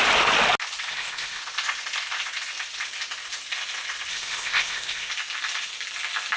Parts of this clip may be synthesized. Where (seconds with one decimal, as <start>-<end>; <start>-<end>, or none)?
0.9-1.4; 4.1-5.1